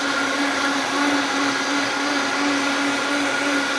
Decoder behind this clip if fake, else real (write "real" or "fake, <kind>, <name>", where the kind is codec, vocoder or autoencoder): real